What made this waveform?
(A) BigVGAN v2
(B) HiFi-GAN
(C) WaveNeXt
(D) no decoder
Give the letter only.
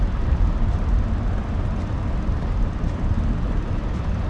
A